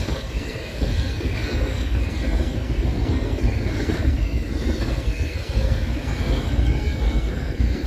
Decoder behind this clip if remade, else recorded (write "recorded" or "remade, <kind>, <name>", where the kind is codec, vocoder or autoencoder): remade, codec, SNAC